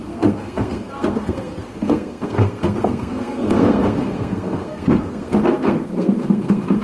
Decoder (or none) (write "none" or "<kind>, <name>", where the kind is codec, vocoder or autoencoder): codec, SNAC